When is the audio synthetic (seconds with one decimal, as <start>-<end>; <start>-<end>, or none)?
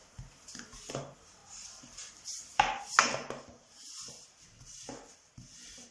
none